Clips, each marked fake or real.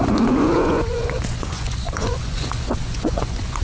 fake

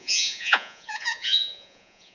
fake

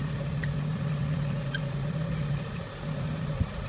fake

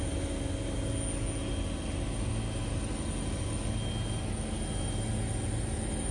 real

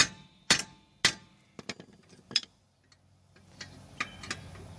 real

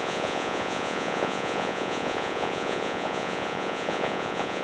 fake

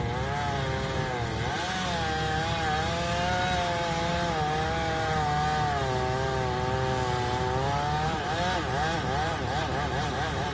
real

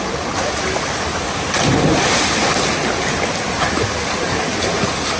real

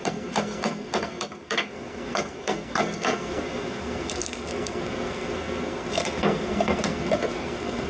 fake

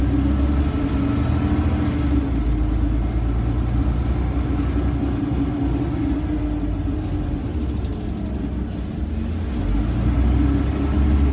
real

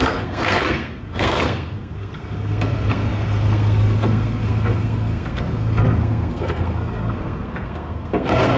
fake